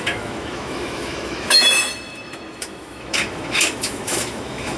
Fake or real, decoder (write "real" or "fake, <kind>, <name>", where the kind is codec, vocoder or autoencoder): fake, autoencoder, DAC-VAE